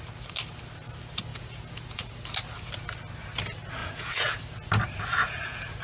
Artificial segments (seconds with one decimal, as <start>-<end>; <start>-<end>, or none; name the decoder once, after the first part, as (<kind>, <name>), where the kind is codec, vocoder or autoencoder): 1.3-2.1 (vocoder, Vocos); 3.8-4.4; 5.2-5.8